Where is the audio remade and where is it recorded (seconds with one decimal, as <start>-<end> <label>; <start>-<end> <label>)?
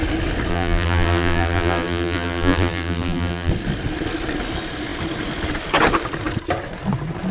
0.0-0.5 recorded; 0.5-3.5 remade; 3.5-7.3 recorded